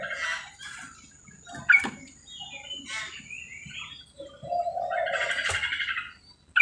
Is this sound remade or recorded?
recorded